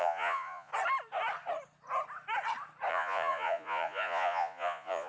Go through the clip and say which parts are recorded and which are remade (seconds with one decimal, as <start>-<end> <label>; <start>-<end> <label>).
0.0-0.7 remade; 0.7-2.9 recorded; 2.9-5.1 remade